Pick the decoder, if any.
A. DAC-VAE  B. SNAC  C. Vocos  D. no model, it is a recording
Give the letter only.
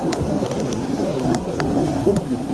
B